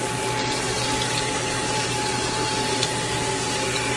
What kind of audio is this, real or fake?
real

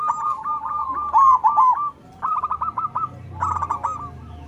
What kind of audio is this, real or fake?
real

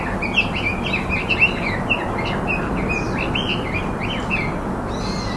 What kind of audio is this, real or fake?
real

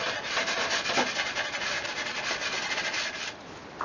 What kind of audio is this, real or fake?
real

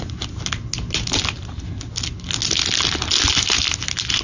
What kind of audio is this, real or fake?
real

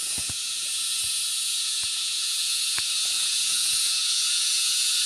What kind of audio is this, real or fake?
fake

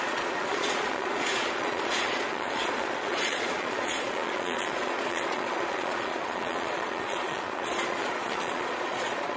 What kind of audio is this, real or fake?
fake